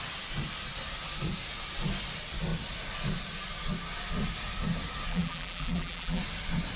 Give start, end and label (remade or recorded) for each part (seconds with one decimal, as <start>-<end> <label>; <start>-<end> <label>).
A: 0.0-5.1 recorded; 5.1-6.2 remade; 6.2-6.8 recorded